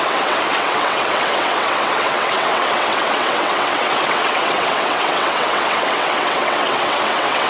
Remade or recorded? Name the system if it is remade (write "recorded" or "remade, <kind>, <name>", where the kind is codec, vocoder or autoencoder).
remade, vocoder, WaveNeXt